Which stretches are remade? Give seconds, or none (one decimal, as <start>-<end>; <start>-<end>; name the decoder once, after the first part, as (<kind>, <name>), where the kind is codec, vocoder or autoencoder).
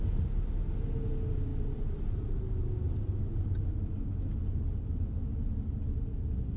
none